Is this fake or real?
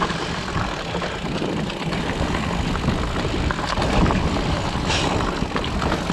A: real